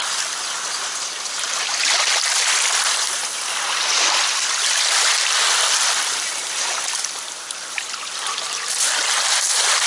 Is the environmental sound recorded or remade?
remade